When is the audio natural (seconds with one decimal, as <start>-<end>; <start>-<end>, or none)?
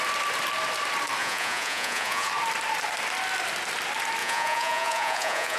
0.0-1.2; 2.3-4.2